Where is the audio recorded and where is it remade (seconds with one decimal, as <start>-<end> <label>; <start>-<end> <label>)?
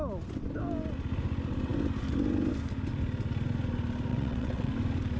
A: 0.0-4.1 recorded; 4.1-4.7 remade; 4.7-5.2 recorded